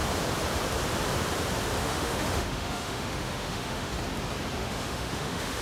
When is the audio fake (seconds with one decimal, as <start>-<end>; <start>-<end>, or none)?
1.8-4.0; 4.6-5.6